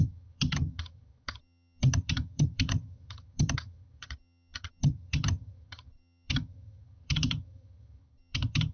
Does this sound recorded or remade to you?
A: remade